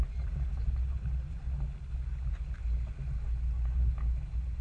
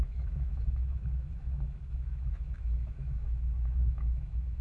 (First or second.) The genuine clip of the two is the first